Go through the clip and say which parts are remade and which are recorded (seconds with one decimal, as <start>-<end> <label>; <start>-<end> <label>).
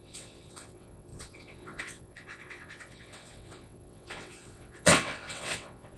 0.0-6.0 remade